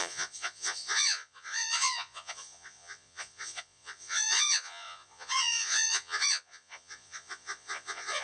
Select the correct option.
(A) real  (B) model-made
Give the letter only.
B